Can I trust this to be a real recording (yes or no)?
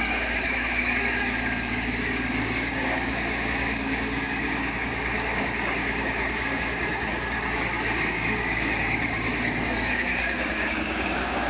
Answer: no